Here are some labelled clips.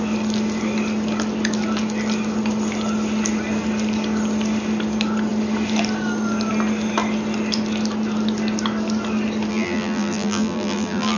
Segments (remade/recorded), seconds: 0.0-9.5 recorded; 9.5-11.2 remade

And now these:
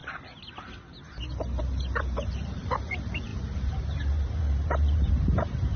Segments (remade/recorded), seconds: 0.0-1.6 recorded; 1.6-5.8 remade

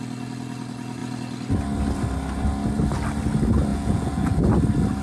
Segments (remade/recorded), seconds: 0.0-3.7 recorded; 3.7-4.5 remade; 4.5-5.0 recorded

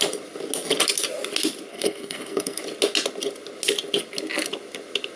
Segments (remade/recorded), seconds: 0.0-1.7 recorded; 1.7-2.6 remade; 2.6-5.2 recorded